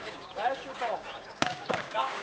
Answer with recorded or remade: remade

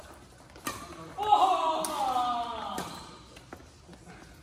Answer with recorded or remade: recorded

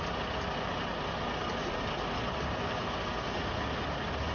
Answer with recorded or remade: recorded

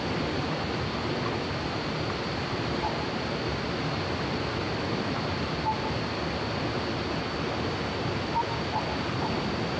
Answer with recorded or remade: recorded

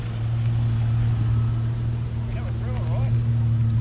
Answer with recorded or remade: recorded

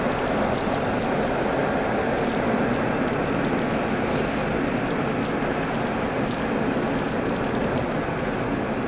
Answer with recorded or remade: recorded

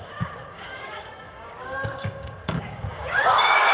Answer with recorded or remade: remade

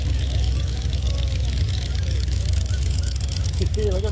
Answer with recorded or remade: remade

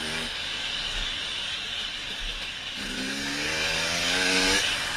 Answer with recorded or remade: remade